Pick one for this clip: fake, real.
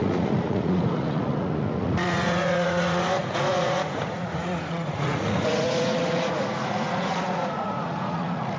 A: fake